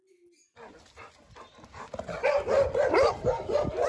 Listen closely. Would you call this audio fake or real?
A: real